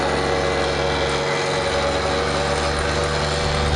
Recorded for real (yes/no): yes